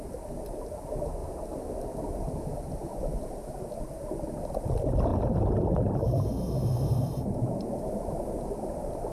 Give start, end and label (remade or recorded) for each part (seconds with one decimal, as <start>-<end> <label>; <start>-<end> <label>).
0.0-1.2 remade; 1.2-4.0 recorded; 4.0-5.1 remade; 5.1-7.9 recorded; 7.9-9.1 remade